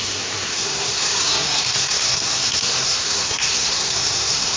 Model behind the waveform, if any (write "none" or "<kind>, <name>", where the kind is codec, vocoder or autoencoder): codec, SNAC